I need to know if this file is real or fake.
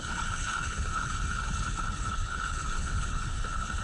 fake